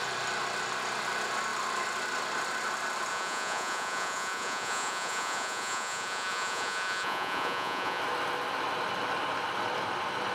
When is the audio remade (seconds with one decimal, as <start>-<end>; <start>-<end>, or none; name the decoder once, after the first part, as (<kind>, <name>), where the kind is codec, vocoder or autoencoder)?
3.1-8.0 (vocoder, Vocos)